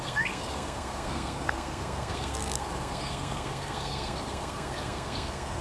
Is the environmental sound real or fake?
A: fake